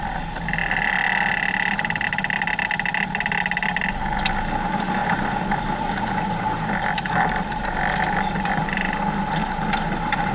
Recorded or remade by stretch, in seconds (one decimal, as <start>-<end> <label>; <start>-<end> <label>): 0.0-5.0 recorded; 5.0-10.3 remade